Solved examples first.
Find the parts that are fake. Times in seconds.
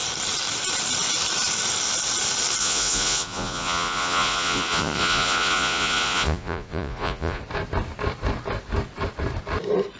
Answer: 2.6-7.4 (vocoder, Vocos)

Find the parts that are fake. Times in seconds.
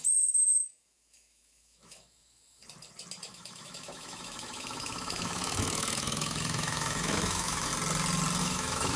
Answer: 0.0-2.6 (autoencoder, DAC-VAE); 3.3-7.7; 8.4-9.0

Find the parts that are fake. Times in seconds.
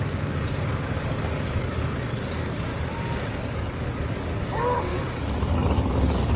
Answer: 0.0-2.7 (codec, DAC); 3.4-6.4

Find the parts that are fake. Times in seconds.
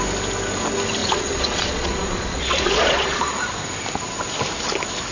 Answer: 1.0-3.5 (vocoder, Vocos)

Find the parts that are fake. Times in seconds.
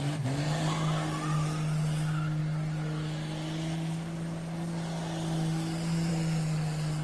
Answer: none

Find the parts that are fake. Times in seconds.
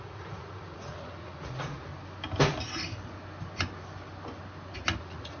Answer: 0.0-1.9 (vocoder, Vocos); 5.0-5.4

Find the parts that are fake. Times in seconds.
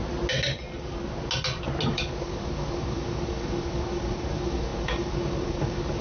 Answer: 1.9-6.0 (codec, DAC)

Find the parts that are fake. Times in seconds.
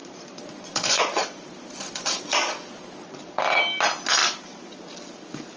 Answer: 0.0-3.4 (vocoder, Vocos)